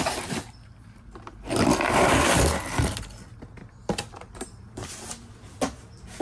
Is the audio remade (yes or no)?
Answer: no